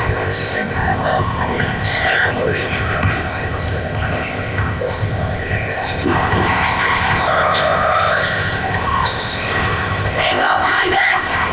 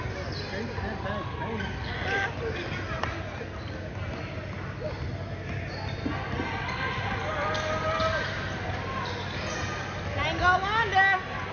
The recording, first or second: second